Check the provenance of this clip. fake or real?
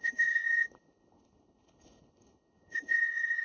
fake